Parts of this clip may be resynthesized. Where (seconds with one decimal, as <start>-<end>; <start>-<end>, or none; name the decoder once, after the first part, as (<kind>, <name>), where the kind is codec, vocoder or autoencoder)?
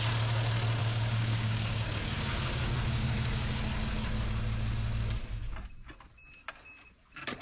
0.8-3.5 (codec, DAC)